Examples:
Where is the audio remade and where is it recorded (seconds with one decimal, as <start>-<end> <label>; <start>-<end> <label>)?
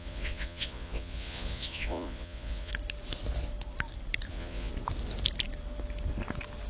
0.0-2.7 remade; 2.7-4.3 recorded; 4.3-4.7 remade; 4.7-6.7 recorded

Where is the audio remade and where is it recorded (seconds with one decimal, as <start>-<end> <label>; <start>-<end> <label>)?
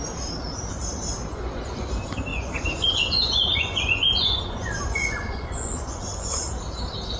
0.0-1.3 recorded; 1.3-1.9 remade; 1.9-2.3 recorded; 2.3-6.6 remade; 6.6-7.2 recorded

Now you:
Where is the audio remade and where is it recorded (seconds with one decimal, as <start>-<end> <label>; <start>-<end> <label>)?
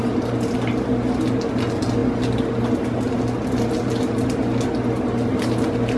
0.0-6.0 recorded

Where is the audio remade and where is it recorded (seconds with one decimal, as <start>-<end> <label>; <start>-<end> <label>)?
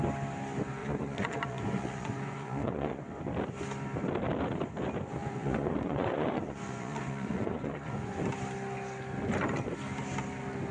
0.0-0.8 recorded; 0.8-3.0 remade; 3.0-5.2 recorded; 5.2-8.2 remade; 8.2-10.7 recorded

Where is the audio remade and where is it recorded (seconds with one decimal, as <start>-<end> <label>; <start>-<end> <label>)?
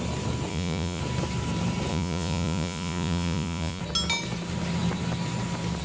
0.0-0.5 recorded; 0.5-1.0 remade; 1.0-1.9 recorded; 1.9-3.8 remade; 3.8-5.8 recorded